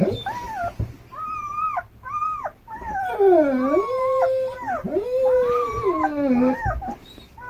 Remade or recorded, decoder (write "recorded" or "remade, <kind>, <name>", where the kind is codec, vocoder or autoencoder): recorded